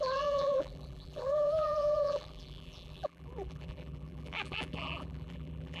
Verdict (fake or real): fake